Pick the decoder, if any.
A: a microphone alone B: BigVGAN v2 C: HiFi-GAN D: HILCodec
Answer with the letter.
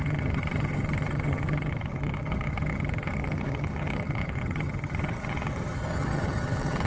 C